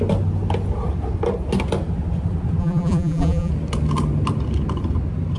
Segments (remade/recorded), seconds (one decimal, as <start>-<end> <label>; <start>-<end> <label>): 0.0-2.6 recorded; 2.6-3.5 remade; 3.5-5.4 recorded